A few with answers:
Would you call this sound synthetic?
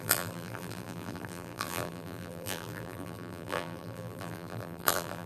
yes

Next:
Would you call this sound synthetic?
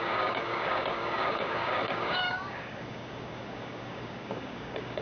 yes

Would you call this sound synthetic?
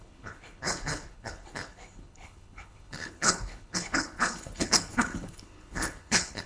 yes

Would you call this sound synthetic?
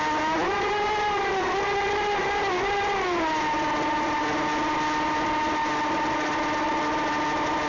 no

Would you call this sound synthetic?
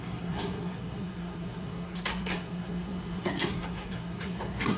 yes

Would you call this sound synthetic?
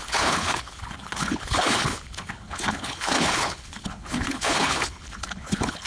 yes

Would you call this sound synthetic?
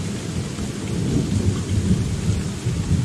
no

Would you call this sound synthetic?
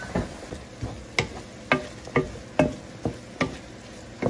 no